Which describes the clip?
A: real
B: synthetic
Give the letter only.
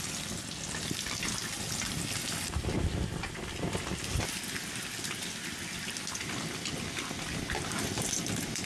A